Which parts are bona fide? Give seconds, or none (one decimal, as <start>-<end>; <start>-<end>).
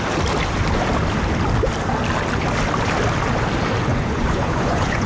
0.0-3.9